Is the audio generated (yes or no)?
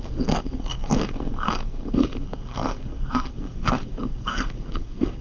yes